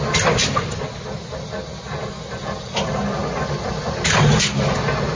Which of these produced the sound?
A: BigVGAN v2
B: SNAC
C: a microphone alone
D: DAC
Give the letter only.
C